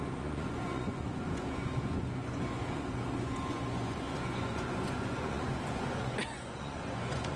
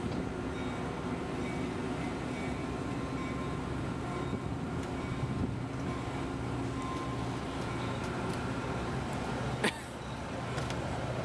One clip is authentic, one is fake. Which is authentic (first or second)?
second